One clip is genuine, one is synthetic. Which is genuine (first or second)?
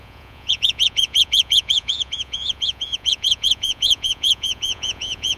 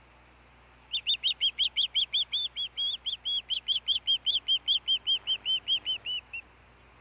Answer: second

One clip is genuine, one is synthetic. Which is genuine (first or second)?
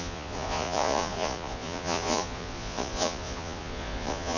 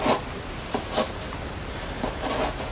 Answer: second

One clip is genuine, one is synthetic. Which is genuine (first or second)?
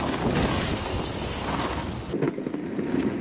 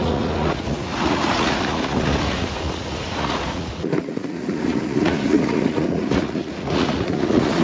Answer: first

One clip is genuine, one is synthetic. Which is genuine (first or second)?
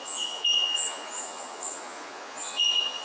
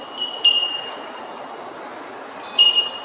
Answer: second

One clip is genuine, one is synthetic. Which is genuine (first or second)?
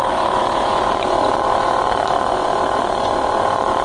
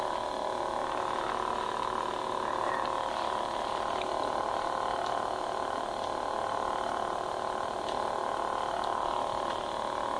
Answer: second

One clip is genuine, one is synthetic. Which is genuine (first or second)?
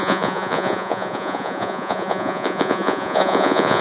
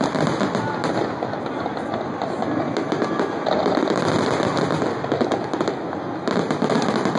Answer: second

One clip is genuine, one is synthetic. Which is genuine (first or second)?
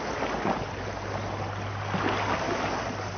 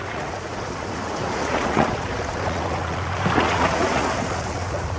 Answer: first